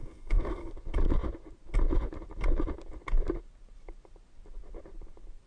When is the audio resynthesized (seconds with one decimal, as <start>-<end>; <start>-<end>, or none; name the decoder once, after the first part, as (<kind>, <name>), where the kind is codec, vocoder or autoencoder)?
0.0-0.7 (codec, SNAC)